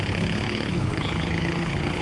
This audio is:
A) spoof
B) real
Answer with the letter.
A